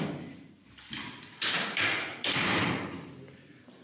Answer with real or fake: fake